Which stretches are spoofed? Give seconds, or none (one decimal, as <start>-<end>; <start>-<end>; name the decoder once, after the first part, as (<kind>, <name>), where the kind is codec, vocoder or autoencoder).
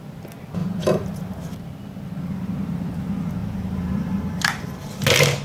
0.6-1.5 (vocoder, BigVGAN v2); 3.4-4.9